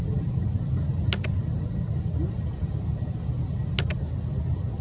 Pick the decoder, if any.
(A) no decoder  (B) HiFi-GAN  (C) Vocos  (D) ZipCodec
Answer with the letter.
A